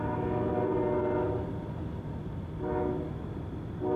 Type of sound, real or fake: real